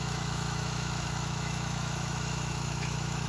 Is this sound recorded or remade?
remade